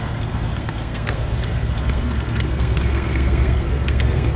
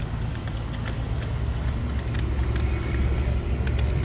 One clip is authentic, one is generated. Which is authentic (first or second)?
second